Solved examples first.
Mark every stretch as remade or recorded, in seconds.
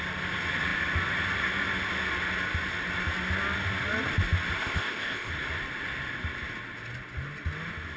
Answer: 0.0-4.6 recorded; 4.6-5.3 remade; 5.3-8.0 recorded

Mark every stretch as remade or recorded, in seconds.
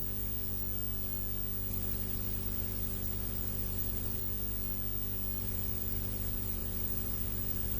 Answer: 0.0-1.7 recorded; 1.7-4.2 remade; 4.2-5.4 recorded; 5.4-7.8 remade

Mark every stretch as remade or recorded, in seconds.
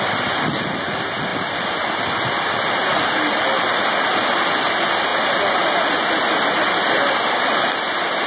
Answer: 0.0-8.3 recorded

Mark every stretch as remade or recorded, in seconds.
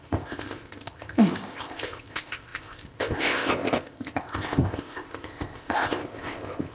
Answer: 0.0-6.7 remade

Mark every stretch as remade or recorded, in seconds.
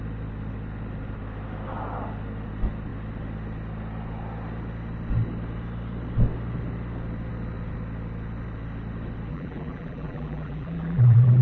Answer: 0.0-9.3 recorded; 9.3-11.4 remade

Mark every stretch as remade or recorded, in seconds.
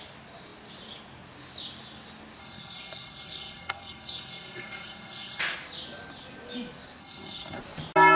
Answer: 0.0-2.4 recorded; 2.4-5.4 remade; 5.4-7.0 recorded; 7.0-7.6 remade; 7.6-8.2 recorded